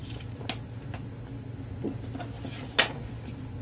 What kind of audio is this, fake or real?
real